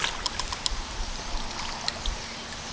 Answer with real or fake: real